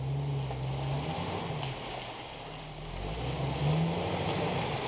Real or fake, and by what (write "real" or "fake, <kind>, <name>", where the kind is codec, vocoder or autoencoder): real